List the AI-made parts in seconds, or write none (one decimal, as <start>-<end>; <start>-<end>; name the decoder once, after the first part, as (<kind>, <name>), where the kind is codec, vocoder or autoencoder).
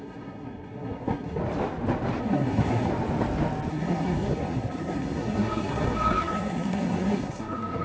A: 0.0-1.4 (codec, SNAC); 2.2-2.9; 3.7-7.8